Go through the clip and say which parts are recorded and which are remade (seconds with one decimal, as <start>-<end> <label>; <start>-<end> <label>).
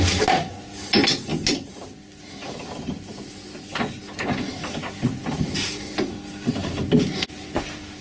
0.0-8.0 recorded